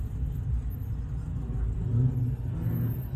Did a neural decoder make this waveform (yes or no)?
no